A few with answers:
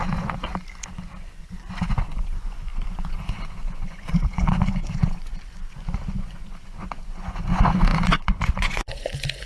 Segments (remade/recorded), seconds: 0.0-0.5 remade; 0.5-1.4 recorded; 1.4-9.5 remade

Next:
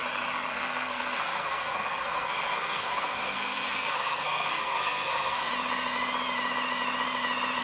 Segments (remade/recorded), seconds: 0.0-0.5 recorded; 0.5-5.4 remade; 5.4-7.6 recorded

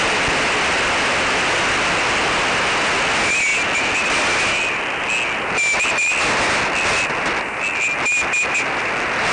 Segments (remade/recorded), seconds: 0.0-9.3 recorded

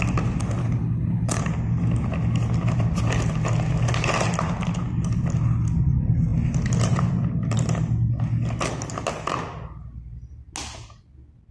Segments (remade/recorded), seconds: 0.0-0.6 recorded; 0.6-1.4 remade; 1.4-11.5 recorded